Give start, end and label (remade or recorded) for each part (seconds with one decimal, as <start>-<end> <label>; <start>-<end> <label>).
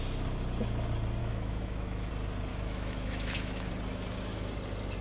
0.0-1.2 recorded; 1.2-2.1 remade; 2.1-2.5 recorded; 2.5-3.7 remade; 3.7-5.0 recorded